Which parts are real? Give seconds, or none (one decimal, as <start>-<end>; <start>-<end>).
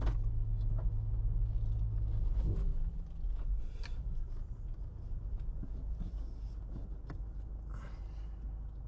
0.0-8.9